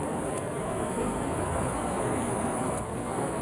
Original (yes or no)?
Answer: no